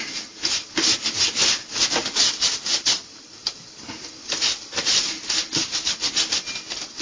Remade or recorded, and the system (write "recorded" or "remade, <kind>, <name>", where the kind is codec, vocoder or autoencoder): recorded